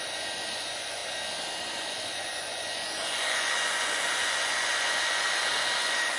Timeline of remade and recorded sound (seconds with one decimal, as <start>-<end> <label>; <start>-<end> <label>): 0.0-1.0 remade; 1.0-1.6 recorded; 1.6-6.2 remade